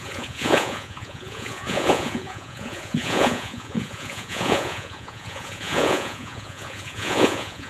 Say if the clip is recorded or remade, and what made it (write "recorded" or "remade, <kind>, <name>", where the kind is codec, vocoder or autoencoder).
remade, vocoder, Vocos